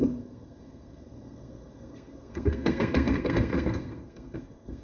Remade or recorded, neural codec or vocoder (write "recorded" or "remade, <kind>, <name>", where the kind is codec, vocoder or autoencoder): remade, codec, SNAC